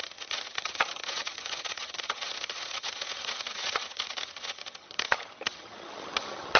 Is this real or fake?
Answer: fake